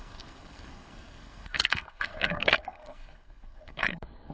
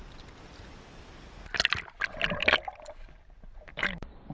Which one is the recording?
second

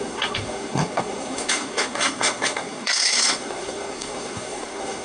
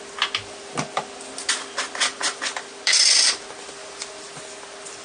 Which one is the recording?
second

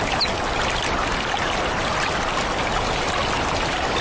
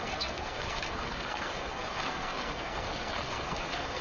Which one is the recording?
first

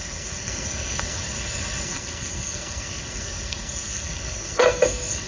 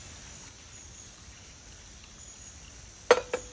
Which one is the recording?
second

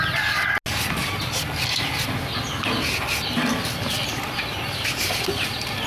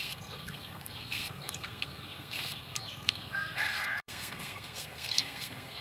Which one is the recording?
first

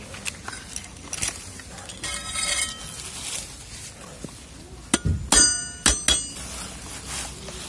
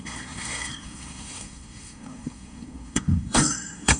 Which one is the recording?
first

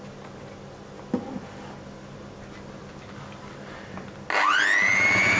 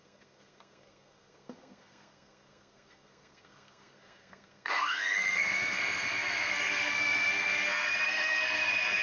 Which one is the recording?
first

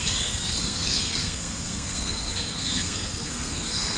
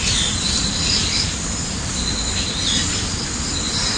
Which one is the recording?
second